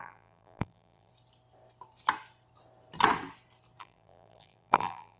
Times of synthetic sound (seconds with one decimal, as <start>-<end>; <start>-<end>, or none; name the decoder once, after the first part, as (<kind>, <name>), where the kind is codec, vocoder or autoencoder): 0.0-1.1 (vocoder, BigVGAN v2); 3.8-5.2